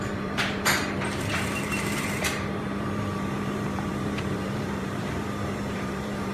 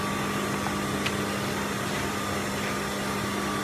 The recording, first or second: second